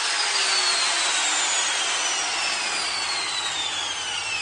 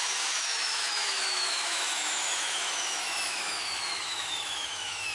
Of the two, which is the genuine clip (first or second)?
first